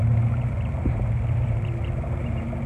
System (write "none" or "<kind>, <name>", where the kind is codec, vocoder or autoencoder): vocoder, BigVGAN v2